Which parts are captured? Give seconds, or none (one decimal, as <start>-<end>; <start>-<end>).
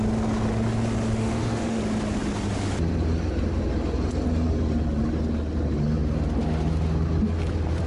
0.0-1.2; 1.8-7.9